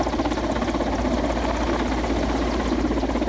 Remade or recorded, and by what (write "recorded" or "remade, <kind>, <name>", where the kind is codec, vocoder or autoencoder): recorded